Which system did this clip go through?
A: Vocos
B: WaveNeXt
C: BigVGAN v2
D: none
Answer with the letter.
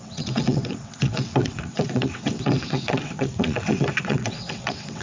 B